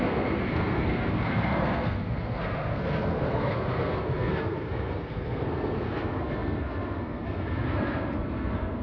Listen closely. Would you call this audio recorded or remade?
remade